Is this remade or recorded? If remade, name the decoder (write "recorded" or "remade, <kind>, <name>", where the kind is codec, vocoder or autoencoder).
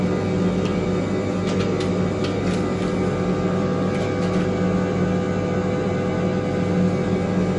recorded